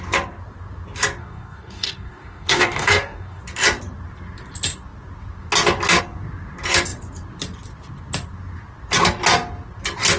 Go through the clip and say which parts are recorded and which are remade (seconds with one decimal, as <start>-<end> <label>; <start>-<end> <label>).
0.0-1.2 recorded; 1.2-3.4 remade; 3.4-10.2 recorded